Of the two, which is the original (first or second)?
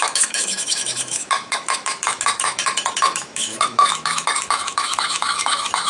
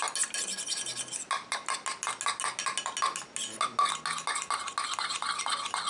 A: second